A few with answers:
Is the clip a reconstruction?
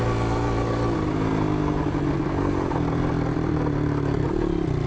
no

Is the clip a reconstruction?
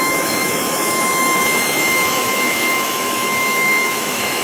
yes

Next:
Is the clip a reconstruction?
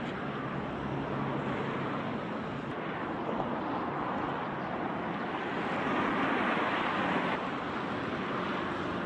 no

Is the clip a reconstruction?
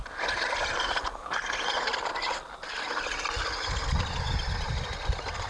no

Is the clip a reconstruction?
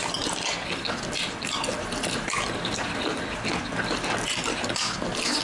no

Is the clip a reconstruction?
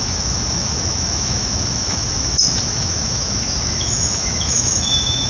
yes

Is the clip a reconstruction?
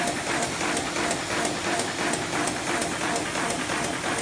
no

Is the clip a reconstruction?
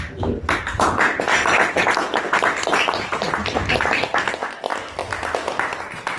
no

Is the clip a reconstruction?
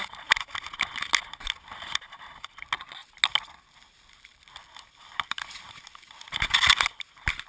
no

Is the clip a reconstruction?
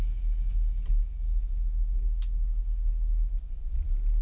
no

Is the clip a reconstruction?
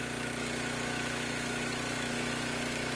yes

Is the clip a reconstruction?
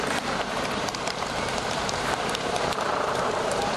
yes